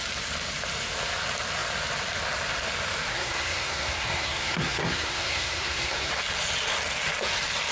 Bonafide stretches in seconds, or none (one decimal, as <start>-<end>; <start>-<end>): 0.0-3.1; 6.1-7.7